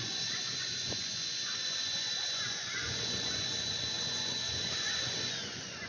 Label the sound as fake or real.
fake